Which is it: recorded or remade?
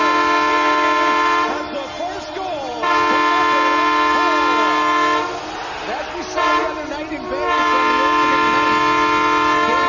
recorded